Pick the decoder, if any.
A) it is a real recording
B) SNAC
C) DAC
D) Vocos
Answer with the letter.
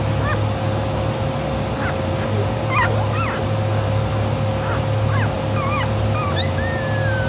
A